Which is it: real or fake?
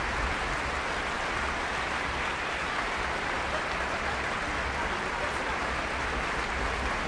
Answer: real